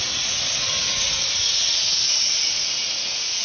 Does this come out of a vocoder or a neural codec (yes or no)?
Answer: yes